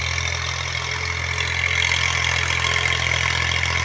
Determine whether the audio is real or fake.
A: real